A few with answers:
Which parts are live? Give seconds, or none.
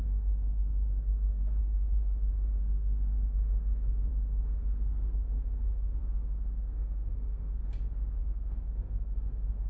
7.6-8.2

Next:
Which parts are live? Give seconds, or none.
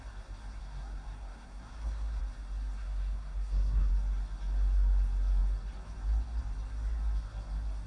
0.0-0.6; 2.2-2.8; 3.9-7.9